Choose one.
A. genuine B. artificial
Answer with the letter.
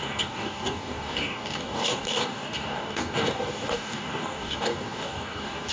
B